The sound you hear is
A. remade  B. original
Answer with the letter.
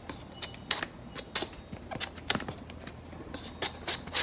B